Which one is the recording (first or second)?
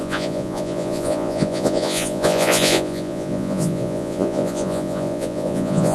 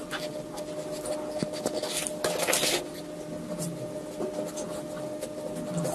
second